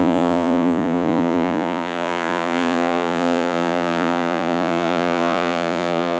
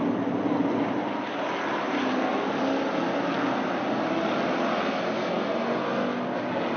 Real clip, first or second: second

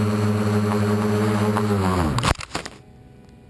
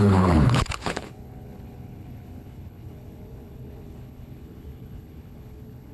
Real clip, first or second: first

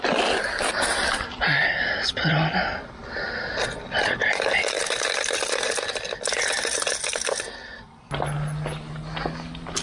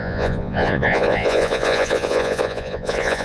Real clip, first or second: first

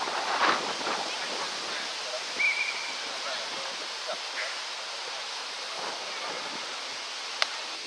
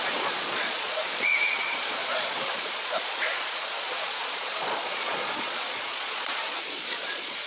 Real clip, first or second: first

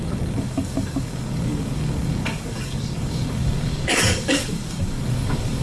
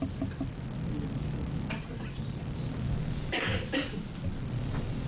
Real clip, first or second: second